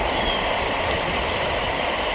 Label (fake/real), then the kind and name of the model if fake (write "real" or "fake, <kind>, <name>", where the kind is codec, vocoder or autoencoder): real